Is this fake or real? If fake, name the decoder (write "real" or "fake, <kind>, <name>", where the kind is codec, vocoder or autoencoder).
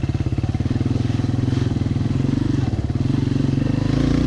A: real